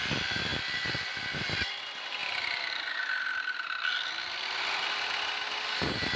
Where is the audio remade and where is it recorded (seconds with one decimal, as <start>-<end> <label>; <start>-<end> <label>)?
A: 0.0-6.2 recorded